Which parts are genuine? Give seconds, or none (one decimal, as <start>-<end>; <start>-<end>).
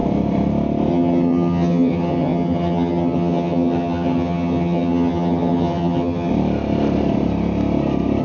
0.0-0.9; 6.3-8.2